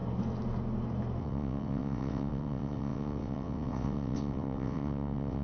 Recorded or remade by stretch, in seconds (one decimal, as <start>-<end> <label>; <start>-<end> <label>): 0.0-1.2 recorded; 1.2-5.4 remade